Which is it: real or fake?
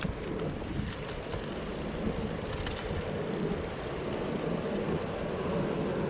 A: fake